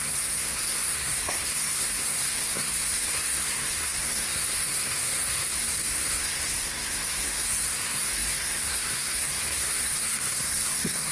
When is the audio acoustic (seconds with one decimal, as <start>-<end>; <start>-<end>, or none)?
none